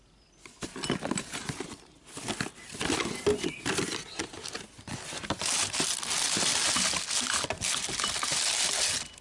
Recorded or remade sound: recorded